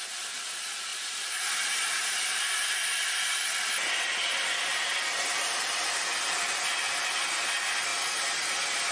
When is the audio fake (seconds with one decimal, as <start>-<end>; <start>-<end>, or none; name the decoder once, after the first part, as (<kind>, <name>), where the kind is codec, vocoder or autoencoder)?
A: none